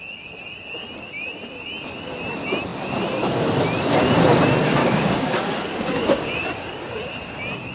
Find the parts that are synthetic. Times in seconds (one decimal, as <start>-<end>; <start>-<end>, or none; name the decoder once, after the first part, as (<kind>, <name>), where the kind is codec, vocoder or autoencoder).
4.8-6.3 (codec, DAC)